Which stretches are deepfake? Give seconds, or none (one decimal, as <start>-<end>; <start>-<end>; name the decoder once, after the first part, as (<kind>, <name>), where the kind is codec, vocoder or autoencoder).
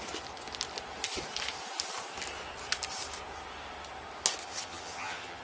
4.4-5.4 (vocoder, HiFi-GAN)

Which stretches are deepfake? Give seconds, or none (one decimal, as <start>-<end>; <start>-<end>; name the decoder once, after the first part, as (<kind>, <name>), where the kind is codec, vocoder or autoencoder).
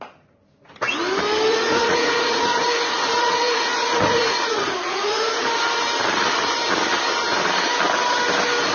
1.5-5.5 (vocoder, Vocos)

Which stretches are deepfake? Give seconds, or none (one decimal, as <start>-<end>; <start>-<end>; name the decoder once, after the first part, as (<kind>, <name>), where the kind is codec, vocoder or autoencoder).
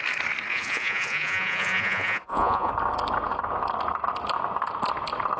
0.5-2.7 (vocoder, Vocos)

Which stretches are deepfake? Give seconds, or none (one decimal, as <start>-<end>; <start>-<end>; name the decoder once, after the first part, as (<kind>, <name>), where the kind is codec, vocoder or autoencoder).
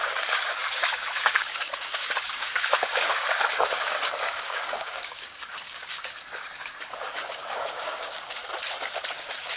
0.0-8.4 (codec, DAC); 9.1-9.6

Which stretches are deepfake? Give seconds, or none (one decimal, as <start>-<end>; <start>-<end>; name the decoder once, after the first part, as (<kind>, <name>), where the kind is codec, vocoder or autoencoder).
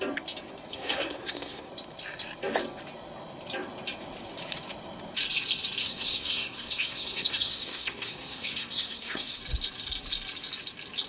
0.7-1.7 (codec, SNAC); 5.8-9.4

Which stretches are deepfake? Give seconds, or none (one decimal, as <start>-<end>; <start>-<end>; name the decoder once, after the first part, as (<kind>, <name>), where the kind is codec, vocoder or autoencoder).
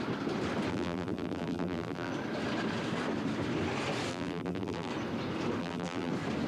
0.7-2.1 (vocoder, BigVGAN v2); 4.1-4.9; 5.6-6.1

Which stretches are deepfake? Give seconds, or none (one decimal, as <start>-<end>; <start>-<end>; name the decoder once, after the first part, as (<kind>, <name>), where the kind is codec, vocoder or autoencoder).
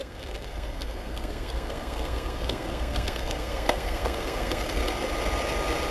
0.0-4.8 (codec, SNAC)